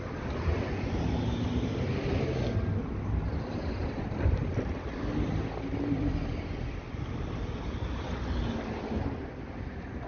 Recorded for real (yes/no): yes